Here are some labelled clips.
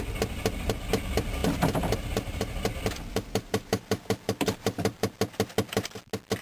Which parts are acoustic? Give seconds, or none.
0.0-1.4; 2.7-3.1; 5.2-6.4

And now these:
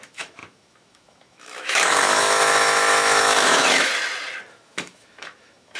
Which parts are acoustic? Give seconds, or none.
3.9-4.5

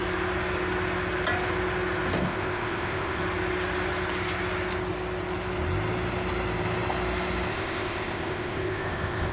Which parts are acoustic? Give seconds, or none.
0.0-2.2; 3.2-7.5

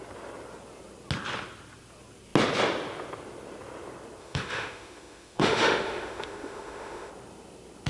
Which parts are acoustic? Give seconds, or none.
0.0-4.2; 7.1-7.9

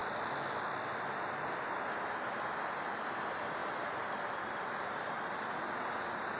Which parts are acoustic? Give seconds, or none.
0.0-6.4

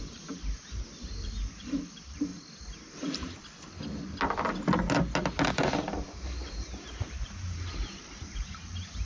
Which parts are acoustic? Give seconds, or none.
2.3-5.5

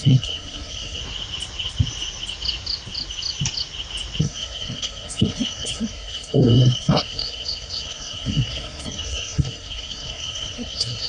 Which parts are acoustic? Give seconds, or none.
1.0-4.2

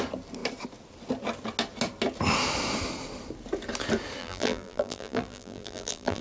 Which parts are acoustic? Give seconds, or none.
0.0-4.2